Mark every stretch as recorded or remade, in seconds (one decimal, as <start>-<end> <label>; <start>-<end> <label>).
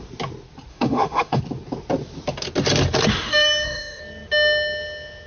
0.0-0.7 recorded; 0.7-1.4 remade; 1.4-3.1 recorded; 3.1-4.0 remade; 4.0-5.3 recorded